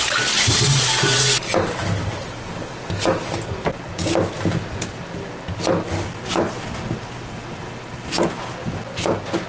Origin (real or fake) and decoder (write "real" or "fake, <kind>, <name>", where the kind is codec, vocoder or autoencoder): real